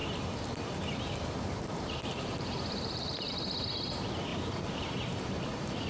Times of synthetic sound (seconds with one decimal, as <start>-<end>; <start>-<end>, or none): 0.0-3.3; 4.3-5.3